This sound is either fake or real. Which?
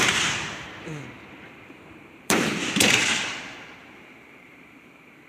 fake